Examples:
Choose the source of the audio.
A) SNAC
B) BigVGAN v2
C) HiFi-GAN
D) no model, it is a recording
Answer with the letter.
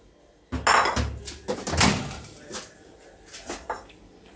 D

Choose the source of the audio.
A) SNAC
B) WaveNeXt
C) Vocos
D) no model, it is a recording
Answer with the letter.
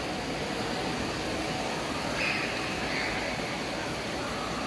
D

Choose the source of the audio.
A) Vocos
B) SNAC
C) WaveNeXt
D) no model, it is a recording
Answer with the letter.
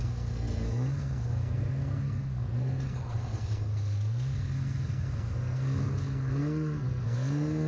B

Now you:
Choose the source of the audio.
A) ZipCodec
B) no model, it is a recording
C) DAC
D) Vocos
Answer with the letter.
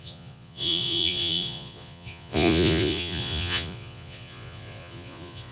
D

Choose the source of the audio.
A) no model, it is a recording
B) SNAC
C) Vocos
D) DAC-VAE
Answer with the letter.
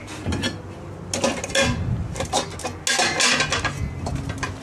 A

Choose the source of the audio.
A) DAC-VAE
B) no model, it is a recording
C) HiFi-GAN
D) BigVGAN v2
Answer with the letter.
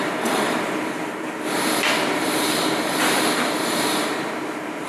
D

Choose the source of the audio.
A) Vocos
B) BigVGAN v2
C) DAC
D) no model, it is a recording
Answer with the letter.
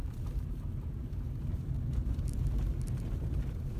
B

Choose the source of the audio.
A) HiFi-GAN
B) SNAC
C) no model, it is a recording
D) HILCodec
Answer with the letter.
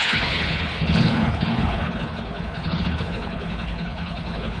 D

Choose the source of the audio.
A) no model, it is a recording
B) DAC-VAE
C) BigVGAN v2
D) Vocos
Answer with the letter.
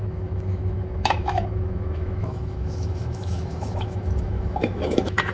B